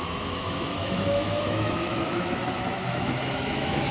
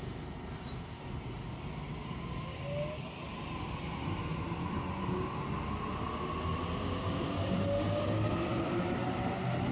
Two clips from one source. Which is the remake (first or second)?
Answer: first